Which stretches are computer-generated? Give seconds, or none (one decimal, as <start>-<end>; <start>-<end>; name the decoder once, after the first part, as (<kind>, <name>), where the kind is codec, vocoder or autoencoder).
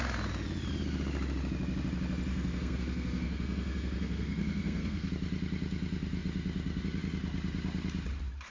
2.3-5.1 (codec, SNAC)